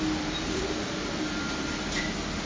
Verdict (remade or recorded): recorded